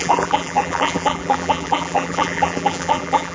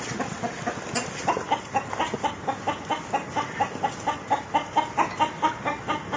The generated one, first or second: first